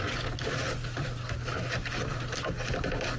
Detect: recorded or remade recorded